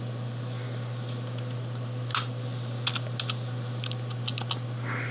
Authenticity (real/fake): real